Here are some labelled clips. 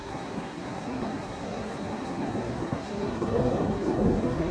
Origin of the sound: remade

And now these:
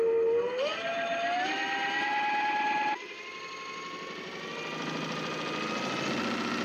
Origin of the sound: recorded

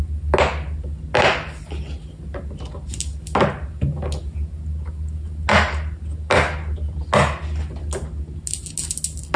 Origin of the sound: recorded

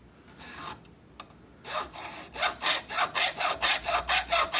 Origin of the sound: recorded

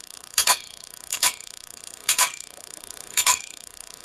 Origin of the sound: remade